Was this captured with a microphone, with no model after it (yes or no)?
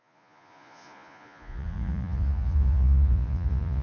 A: no